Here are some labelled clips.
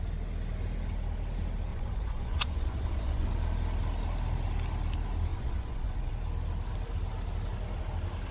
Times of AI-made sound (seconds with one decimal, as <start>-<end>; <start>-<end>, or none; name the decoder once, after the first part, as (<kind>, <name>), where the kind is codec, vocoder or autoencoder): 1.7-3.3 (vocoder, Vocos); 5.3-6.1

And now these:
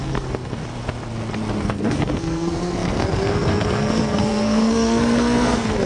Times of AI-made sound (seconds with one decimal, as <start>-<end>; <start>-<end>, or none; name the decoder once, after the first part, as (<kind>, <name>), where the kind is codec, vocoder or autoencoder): 0.0-0.6 (codec, SNAC); 1.6-5.9

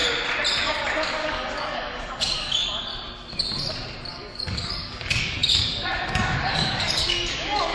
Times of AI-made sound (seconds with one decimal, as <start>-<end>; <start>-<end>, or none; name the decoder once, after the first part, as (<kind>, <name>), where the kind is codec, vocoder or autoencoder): 0.6-2.9 (codec, DAC); 4.1-7.7